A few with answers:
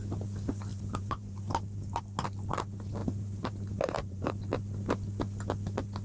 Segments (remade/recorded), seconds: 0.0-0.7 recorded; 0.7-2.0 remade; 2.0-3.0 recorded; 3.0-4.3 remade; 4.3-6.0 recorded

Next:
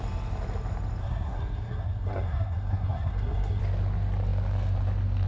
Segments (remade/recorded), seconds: 0.0-1.0 recorded; 1.0-3.6 remade; 3.6-5.3 recorded